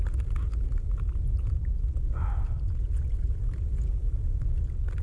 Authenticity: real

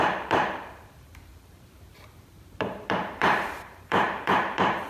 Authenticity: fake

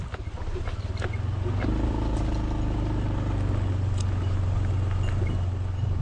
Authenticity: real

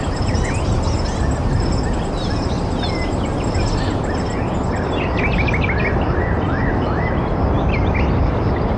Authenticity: real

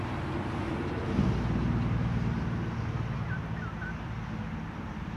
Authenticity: real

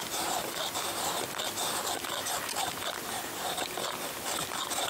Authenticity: real